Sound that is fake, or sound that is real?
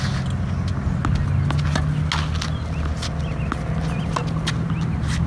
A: real